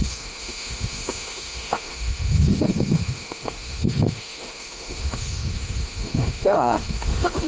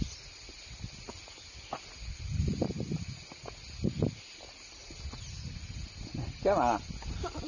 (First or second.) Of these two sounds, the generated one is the first